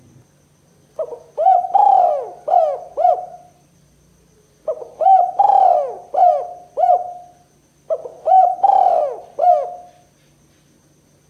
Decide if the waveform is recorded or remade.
recorded